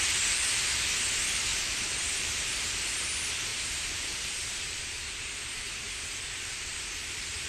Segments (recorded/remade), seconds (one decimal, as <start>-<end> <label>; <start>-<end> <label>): 0.0-1.5 recorded; 1.5-2.5 remade; 2.5-3.5 recorded; 3.5-5.4 remade; 5.4-7.5 recorded